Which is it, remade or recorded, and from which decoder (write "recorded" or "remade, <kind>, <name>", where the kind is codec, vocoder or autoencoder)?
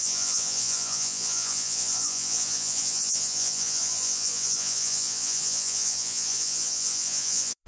remade, vocoder, Vocos